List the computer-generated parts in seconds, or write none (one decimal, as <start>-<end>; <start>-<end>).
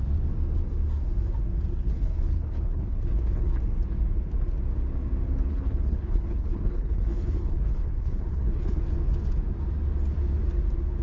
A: 1.7-3.5; 5.5-8.8